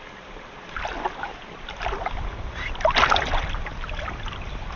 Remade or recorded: recorded